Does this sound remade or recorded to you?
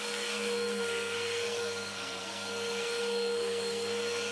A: remade